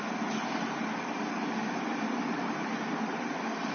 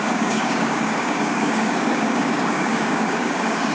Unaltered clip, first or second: first